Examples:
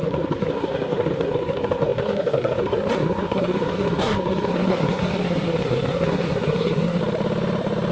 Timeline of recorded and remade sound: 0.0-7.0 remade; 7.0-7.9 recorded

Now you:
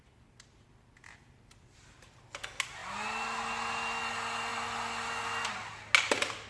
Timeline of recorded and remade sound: 0.0-6.5 recorded

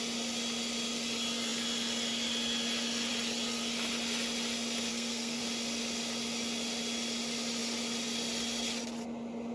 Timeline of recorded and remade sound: 0.0-4.9 recorded; 4.9-5.4 remade; 5.4-9.5 recorded

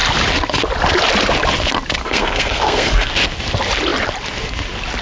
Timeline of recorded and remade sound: 0.0-2.0 recorded; 2.0-3.1 remade; 3.1-5.0 recorded

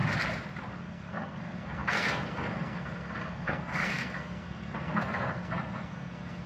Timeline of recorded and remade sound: 0.0-0.7 recorded; 0.7-6.5 remade

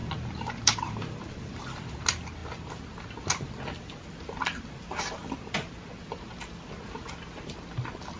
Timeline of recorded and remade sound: 0.0-1.9 remade; 1.9-8.2 recorded

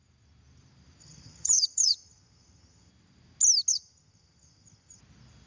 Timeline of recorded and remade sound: 0.0-1.0 recorded; 1.0-2.9 remade; 2.9-3.7 recorded; 3.7-5.0 remade; 5.0-5.5 recorded